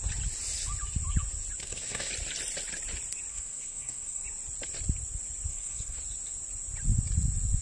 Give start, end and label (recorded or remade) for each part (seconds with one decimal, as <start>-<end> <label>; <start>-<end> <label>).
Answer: 0.0-1.6 recorded; 1.6-2.1 remade; 2.1-3.3 recorded; 3.3-4.2 remade; 4.2-5.5 recorded; 5.5-6.0 remade; 6.0-7.6 recorded